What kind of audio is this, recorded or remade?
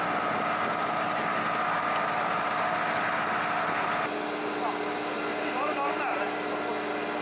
recorded